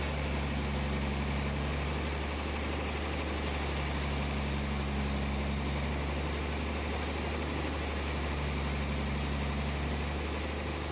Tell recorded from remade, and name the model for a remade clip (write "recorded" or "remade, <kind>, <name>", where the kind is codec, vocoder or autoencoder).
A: recorded